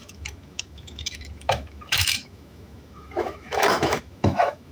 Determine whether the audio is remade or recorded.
remade